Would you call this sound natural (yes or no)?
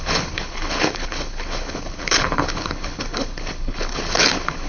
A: no